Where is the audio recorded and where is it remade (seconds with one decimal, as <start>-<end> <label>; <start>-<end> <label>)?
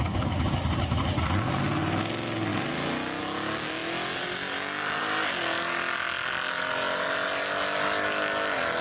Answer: 0.0-8.8 recorded